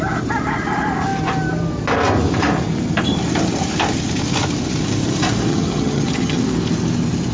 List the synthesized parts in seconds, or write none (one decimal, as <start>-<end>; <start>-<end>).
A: 5.5-6.4